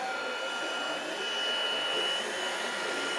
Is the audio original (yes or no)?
yes